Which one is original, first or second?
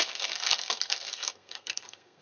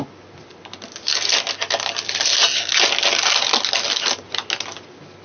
second